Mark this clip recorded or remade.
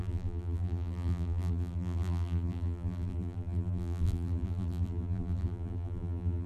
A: remade